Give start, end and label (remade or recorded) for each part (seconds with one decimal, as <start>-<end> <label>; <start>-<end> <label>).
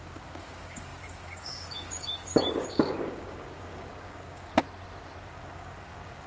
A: 0.0-4.5 remade; 4.5-5.2 recorded; 5.2-6.3 remade